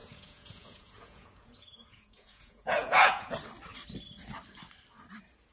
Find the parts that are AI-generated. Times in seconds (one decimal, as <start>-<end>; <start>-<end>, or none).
0.0-3.3